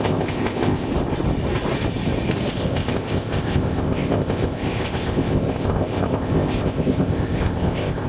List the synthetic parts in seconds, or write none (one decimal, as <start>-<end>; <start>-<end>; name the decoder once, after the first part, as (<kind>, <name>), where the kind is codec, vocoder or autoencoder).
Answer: 0.0-0.9 (codec, ZipCodec); 2.5-8.1